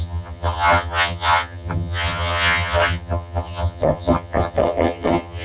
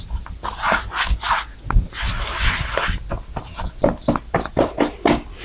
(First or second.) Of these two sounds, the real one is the second